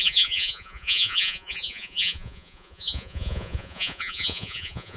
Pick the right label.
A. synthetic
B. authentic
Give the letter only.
A